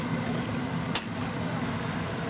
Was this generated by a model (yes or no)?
no